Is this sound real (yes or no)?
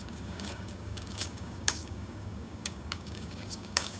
no